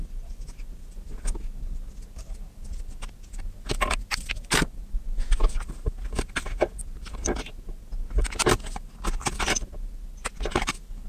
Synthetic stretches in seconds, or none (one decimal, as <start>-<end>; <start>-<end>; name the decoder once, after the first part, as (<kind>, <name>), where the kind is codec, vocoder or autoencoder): none